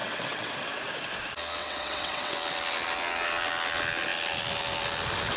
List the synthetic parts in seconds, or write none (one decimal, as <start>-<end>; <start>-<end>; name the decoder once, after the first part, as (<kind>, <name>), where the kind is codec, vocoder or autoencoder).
0.0-0.5 (vocoder, WaveNeXt); 1.6-2.3